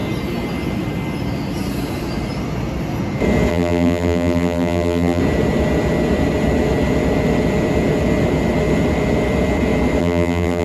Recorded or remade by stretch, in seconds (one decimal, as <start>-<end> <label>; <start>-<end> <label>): 0.0-3.5 recorded; 3.5-5.2 remade; 5.2-10.0 recorded; 10.0-10.6 remade